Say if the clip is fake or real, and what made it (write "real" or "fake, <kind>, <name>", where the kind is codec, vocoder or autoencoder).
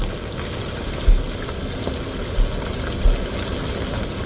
real